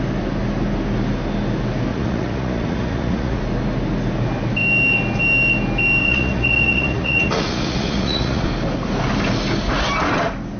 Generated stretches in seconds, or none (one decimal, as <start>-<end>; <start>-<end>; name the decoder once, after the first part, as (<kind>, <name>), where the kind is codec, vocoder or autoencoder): 1.9-3.4 (vocoder, Vocos); 6.0-8.5